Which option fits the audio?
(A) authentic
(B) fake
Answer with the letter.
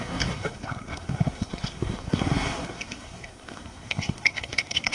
B